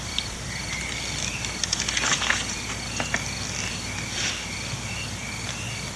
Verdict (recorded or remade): recorded